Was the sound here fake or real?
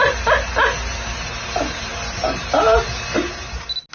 real